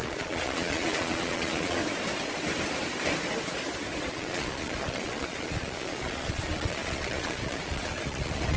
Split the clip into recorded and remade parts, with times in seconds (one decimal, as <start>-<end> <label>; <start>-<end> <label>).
0.0-1.8 remade; 1.8-4.1 recorded; 4.1-8.6 remade